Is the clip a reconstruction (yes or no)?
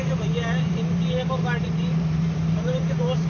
yes